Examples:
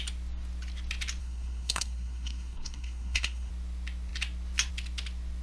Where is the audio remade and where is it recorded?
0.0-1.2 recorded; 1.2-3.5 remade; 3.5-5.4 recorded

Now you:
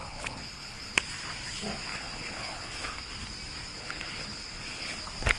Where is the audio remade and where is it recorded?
0.0-1.0 remade; 1.0-1.9 recorded; 1.9-3.1 remade; 3.1-3.7 recorded; 3.7-5.0 remade; 5.0-5.4 recorded

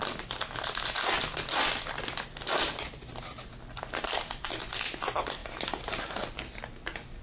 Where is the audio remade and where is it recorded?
0.0-7.2 recorded

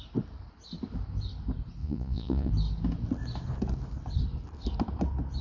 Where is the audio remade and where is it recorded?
0.0-1.8 recorded; 1.8-2.5 remade; 2.5-5.4 recorded

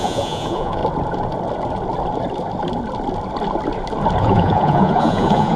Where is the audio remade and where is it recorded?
0.0-0.8 remade; 0.8-4.2 recorded; 4.2-5.6 remade

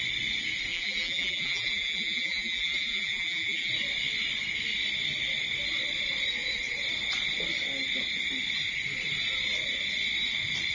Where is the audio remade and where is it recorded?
0.0-0.7 recorded; 0.7-3.7 remade; 3.7-10.7 recorded